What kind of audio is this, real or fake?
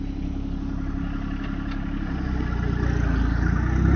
real